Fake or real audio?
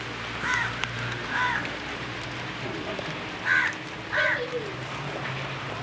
real